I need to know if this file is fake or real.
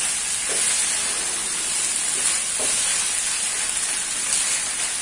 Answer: real